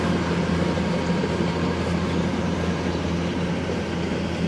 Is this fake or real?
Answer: real